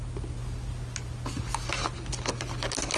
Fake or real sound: real